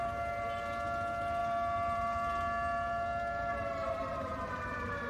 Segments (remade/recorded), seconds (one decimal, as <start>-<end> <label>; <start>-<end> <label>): 0.0-5.1 remade